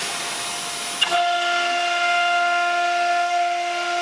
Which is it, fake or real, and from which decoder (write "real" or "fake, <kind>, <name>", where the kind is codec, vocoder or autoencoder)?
real